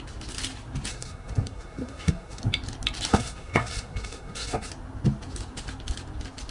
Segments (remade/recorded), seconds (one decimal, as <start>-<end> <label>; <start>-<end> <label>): 0.0-0.9 recorded; 0.9-2.4 remade; 2.4-3.1 recorded; 3.1-4.7 remade; 4.7-6.5 recorded